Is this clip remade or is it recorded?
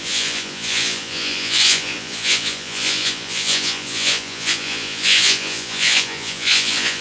remade